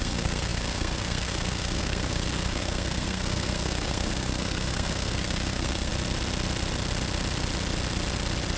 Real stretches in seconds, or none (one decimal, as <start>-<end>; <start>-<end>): 5.9-8.6